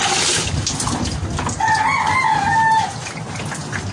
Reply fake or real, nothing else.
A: real